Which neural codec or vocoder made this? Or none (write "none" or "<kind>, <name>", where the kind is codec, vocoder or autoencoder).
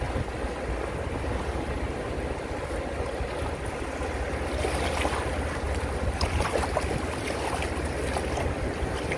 none